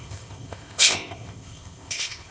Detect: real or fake fake